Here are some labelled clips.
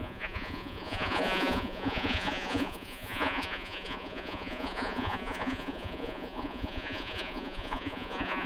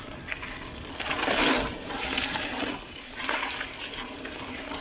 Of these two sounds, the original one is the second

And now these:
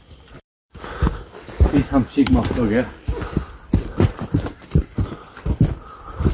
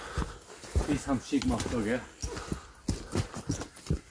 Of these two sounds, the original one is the second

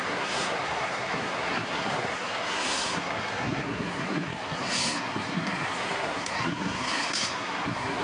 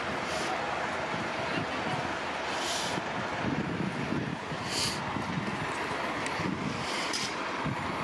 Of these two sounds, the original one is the second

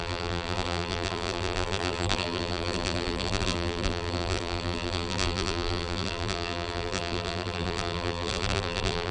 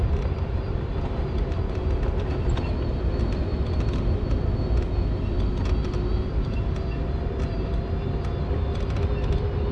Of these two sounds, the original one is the second